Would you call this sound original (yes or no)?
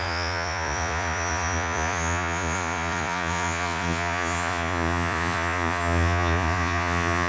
no